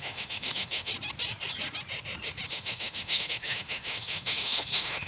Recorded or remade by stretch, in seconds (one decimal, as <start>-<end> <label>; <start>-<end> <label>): 0.0-0.9 remade; 0.9-2.5 recorded; 2.5-5.1 remade